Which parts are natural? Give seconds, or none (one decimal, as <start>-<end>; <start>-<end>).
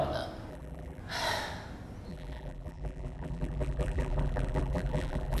0.0-0.5; 1.0-2.1